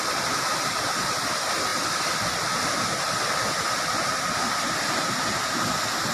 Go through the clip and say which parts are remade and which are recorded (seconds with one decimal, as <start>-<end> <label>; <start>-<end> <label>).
0.0-6.1 recorded